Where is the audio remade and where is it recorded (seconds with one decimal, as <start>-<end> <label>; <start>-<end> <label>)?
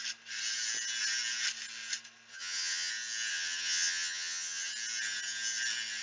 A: 0.0-2.3 recorded; 2.3-2.9 remade; 2.9-3.3 recorded; 3.3-4.7 remade; 4.7-6.0 recorded